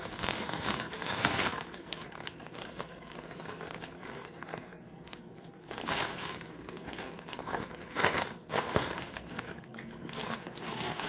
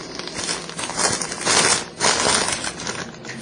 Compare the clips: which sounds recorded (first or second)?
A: second